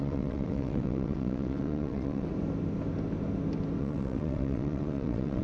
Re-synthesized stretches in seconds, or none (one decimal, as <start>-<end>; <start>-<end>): 0.0-2.3; 3.8-5.4